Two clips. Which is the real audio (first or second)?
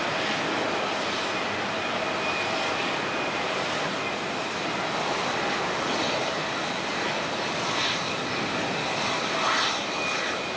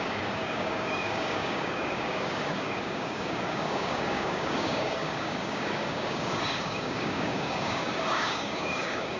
first